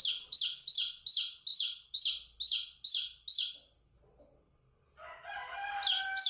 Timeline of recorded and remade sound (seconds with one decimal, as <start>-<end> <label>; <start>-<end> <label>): 0.0-6.3 recorded